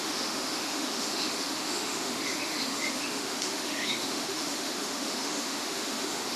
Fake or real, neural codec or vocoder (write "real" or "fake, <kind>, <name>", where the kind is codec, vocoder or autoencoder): fake, autoencoder, DAC-VAE